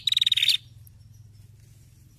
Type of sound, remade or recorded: recorded